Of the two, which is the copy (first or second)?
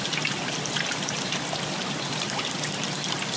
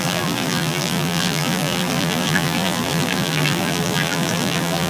second